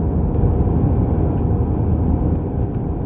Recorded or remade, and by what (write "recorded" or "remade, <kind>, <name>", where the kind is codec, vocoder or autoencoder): recorded